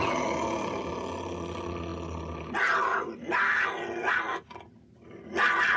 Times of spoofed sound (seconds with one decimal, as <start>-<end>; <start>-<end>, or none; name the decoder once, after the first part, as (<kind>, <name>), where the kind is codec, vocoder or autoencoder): none

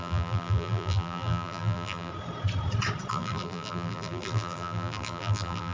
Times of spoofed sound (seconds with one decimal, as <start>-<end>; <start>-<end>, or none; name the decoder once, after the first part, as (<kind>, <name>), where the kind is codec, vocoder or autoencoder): 0.0-2.1 (vocoder, BigVGAN v2); 3.1-5.7

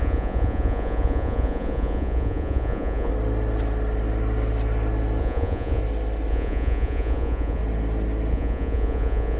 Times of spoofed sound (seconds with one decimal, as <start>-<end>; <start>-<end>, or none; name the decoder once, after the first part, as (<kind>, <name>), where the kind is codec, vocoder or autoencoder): 0.0-3.1 (vocoder, Vocos); 5.2-5.8; 6.3-7.6; 8.3-9.4

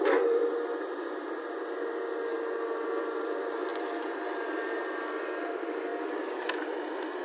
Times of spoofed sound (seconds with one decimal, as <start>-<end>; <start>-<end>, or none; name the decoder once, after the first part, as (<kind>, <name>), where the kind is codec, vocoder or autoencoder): 0.0-0.4 (vocoder, BigVGAN v2); 2.9-5.9

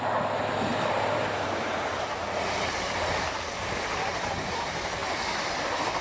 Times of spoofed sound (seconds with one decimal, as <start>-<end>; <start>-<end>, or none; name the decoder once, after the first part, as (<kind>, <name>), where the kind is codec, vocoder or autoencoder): 0.7-4.3 (vocoder, BigVGAN v2)

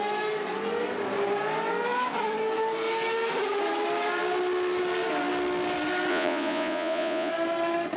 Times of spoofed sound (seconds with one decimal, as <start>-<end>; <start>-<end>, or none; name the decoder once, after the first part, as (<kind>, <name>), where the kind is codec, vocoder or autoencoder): 6.1-7.3 (vocoder, Vocos)

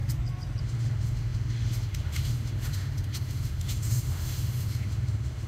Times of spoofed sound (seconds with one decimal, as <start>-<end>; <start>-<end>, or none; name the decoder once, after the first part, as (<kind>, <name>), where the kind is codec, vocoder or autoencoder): 0.6-5.5 (autoencoder, DAC-VAE)

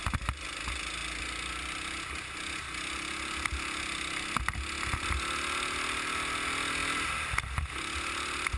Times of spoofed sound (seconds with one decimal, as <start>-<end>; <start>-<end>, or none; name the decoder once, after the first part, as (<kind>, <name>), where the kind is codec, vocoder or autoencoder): none